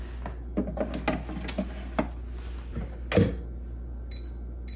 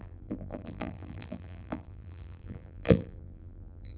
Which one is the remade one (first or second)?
second